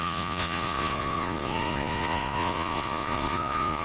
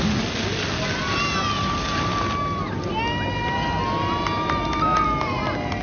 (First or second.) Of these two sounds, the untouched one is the second